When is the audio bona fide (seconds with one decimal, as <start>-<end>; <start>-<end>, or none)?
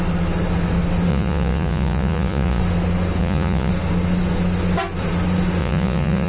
0.0-1.1; 2.6-3.2; 3.7-5.6